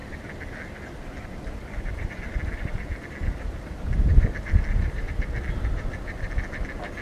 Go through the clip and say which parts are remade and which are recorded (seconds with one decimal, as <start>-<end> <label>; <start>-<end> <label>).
0.0-7.0 recorded